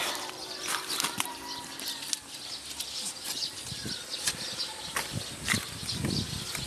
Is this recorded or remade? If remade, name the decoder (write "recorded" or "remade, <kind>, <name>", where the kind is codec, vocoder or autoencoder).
recorded